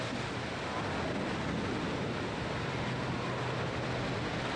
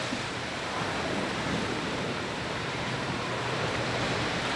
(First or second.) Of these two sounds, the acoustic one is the first